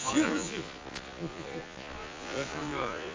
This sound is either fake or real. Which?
fake